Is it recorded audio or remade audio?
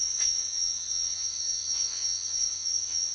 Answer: remade